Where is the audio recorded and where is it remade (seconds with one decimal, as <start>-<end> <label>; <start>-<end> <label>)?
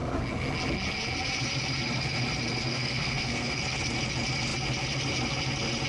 0.0-2.7 recorded; 2.7-3.6 remade; 3.6-5.9 recorded